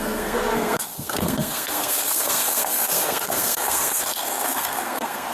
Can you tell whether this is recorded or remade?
remade